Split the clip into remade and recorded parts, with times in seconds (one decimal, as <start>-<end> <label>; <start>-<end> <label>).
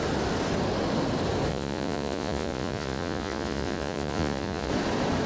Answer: 0.0-1.5 recorded; 1.5-4.7 remade; 4.7-5.3 recorded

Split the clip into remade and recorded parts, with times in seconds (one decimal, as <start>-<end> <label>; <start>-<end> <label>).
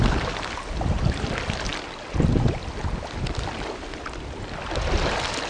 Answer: 0.0-5.5 recorded